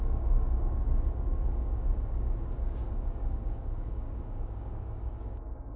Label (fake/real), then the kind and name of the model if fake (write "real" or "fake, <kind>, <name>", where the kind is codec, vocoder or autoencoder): fake, codec, DAC